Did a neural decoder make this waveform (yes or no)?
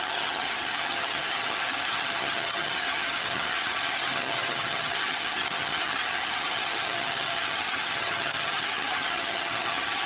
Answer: yes